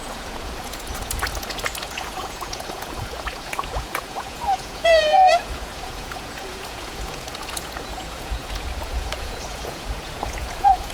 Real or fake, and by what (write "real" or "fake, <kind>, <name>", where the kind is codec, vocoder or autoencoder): fake, vocoder, Vocos